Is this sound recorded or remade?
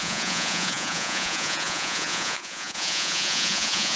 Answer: remade